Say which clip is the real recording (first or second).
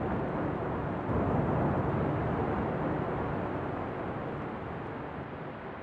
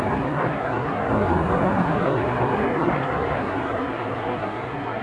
first